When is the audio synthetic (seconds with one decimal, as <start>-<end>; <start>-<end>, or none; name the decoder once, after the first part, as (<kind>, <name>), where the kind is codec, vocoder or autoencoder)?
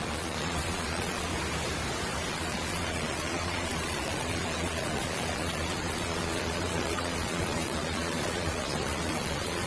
0.0-1.3 (vocoder, Vocos); 2.3-9.7